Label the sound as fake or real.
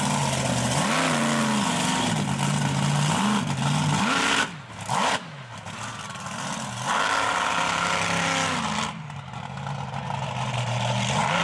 real